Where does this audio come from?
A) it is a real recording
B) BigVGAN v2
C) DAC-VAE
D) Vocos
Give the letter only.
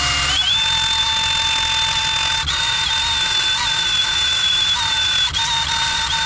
A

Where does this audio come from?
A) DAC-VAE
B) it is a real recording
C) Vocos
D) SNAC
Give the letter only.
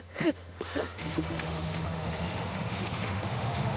A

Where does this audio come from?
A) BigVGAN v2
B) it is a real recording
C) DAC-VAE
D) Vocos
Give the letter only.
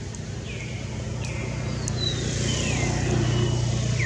B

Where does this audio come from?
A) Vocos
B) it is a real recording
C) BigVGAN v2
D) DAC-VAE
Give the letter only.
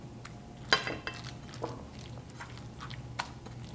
B